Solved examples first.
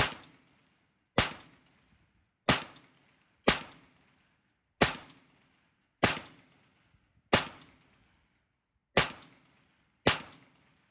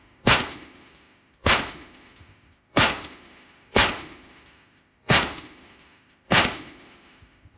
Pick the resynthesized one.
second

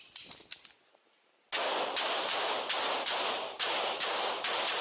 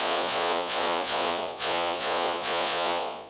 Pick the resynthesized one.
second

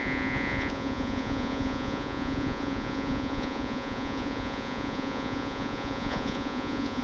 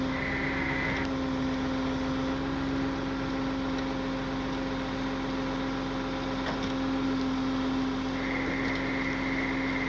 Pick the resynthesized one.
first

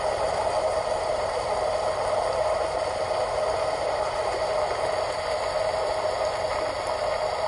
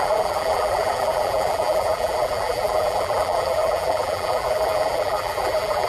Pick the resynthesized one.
second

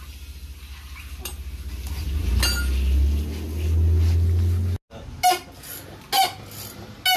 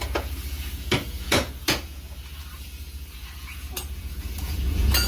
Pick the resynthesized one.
second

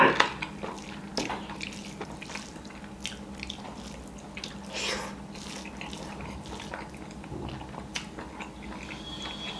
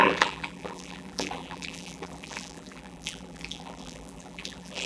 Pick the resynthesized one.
second